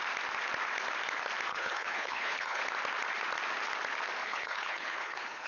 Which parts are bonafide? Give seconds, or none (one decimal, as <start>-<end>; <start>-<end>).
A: 0.0-1.5; 2.6-4.2